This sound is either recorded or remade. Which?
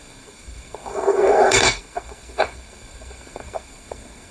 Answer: remade